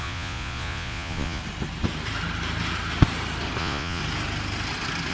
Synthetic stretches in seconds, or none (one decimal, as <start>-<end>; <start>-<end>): 0.0-1.4; 3.6-4.0